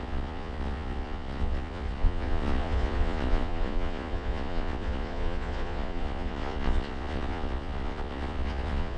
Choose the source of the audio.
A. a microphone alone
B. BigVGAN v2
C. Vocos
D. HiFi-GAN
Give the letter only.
C